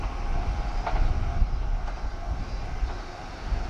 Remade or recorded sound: recorded